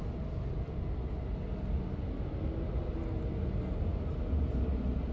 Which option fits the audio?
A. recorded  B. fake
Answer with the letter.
A